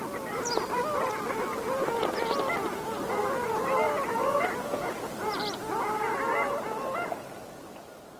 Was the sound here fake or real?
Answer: real